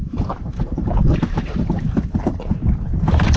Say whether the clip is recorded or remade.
remade